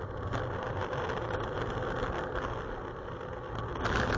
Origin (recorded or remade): recorded